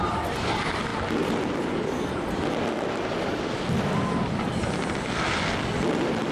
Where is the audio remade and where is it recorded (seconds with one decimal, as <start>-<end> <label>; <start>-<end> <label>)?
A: 0.0-6.3 recorded